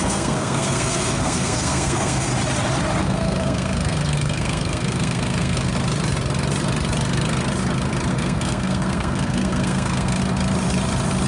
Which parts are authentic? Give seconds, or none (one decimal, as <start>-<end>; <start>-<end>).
2.3-3.0; 5.7-8.1; 10.2-11.3